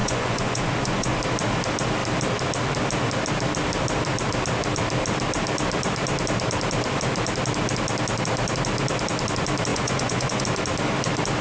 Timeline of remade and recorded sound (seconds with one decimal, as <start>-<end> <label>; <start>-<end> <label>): 0.0-1.2 remade; 1.2-9.7 recorded; 9.7-10.4 remade; 10.4-11.4 recorded